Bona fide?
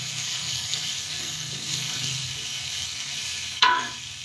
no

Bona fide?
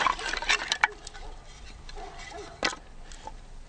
yes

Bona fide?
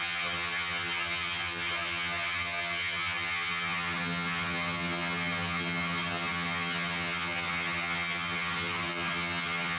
no